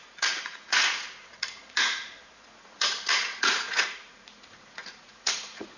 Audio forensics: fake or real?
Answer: fake